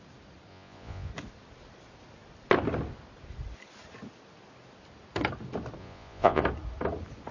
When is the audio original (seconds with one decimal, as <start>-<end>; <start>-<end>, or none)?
0.0-0.5; 1.1-5.8; 6.4-7.3